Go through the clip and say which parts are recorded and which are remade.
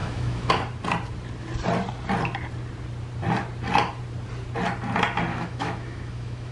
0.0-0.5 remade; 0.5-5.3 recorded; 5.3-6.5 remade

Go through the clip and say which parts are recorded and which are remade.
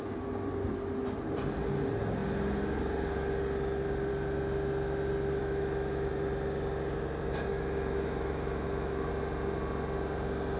0.0-5.4 recorded; 5.4-6.1 remade; 6.1-7.5 recorded; 7.5-9.1 remade; 9.1-10.6 recorded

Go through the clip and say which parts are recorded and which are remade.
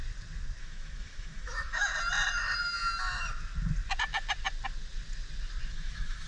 0.0-0.6 recorded; 0.6-1.9 remade; 1.9-5.7 recorded; 5.7-6.3 remade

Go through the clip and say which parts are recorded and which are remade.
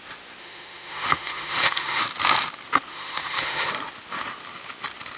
0.0-0.4 recorded; 0.4-2.0 remade; 2.0-2.9 recorded; 2.9-3.7 remade; 3.7-5.2 recorded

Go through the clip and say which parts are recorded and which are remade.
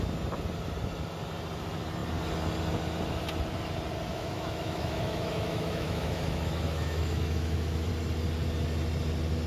0.0-4.1 recorded; 4.1-7.9 remade; 7.9-9.5 recorded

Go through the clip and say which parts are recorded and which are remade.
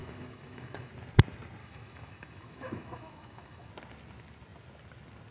0.0-0.9 remade; 0.9-1.6 recorded; 1.6-3.7 remade; 3.7-5.3 recorded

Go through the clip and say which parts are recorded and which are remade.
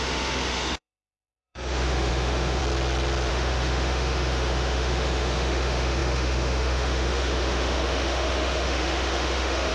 0.0-2.6 remade; 2.6-3.3 recorded; 3.3-9.7 remade